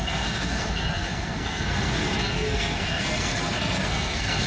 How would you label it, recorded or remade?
remade